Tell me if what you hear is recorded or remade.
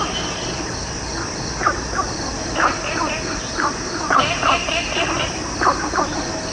recorded